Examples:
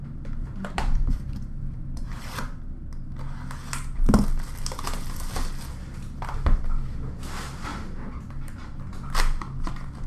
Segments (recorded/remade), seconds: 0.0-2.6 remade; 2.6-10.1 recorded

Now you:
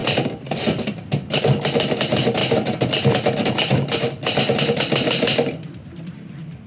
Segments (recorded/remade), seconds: 0.0-6.7 remade